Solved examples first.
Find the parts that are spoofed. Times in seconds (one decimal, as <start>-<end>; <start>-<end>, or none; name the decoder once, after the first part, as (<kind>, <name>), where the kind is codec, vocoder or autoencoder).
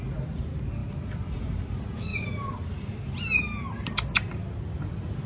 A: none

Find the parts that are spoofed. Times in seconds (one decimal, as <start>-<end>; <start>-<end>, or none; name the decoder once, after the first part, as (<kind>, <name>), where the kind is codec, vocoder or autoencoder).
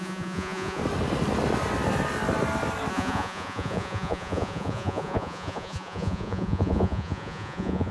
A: 0.0-0.8 (vocoder, Vocos); 2.9-7.9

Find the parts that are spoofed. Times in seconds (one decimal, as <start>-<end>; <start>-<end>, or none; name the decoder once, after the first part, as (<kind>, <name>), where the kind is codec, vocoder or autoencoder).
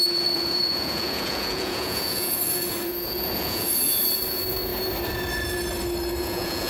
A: 0.0-4.7 (vocoder, Vocos); 6.2-6.7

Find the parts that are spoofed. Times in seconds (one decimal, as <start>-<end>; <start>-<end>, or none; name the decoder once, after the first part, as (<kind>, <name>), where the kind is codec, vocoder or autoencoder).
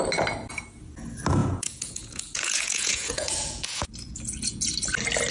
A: 1.4-4.6 (vocoder, Vocos)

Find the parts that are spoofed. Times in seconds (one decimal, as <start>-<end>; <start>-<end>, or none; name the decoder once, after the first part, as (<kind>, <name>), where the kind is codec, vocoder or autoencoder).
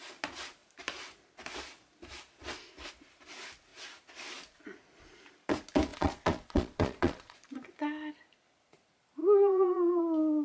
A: 5.9-7.5 (vocoder, Vocos); 9.2-10.0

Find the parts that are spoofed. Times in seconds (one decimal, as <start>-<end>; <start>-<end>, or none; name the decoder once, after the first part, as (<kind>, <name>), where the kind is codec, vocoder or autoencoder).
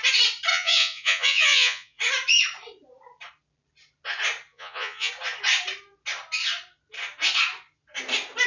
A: 0.5-2.0 (vocoder, Vocos); 4.5-5.1